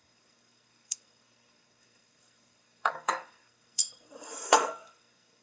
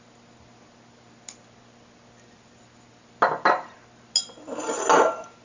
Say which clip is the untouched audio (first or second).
second